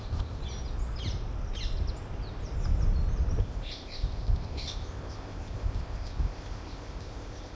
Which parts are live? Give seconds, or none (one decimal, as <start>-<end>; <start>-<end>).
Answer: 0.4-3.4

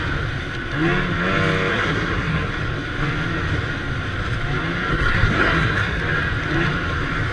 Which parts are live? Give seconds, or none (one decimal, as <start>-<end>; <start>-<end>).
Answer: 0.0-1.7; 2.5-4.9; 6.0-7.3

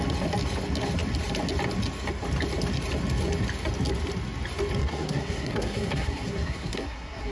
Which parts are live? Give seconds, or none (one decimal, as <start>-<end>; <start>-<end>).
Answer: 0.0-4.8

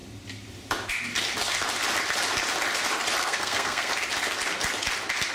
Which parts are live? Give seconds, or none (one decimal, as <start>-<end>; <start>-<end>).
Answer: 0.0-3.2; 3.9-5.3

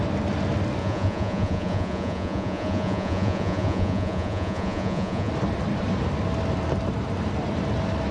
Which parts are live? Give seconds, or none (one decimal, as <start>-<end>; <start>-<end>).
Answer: 0.0-0.8; 5.3-8.1

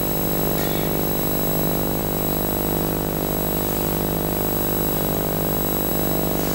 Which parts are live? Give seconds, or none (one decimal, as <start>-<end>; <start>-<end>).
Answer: 0.0-6.5

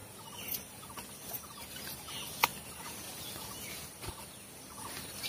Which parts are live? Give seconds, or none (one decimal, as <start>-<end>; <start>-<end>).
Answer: 0.0-5.3